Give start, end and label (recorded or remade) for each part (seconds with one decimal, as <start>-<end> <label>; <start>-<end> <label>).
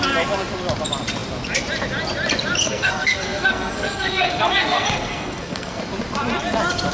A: 0.0-2.6 recorded; 2.6-5.8 remade; 5.8-6.9 recorded